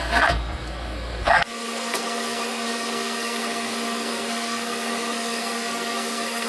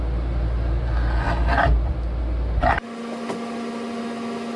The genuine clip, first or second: second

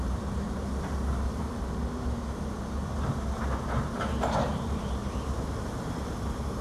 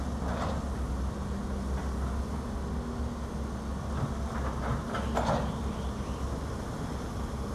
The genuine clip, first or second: second